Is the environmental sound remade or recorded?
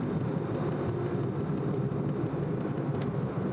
recorded